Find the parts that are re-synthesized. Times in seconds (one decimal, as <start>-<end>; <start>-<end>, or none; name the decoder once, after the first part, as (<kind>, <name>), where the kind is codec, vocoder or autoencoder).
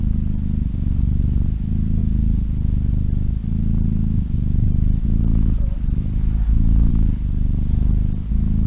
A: none